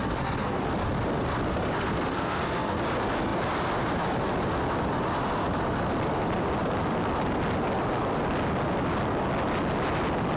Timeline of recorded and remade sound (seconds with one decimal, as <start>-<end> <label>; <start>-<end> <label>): 0.0-0.7 remade; 0.7-2.1 recorded; 2.1-2.8 remade; 2.8-10.4 recorded